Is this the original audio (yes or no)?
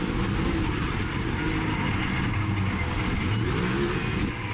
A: yes